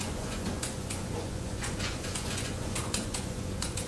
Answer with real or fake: fake